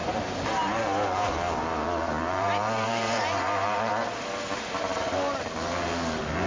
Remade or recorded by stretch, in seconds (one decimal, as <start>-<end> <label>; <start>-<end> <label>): 0.0-3.9 remade; 3.9-6.5 recorded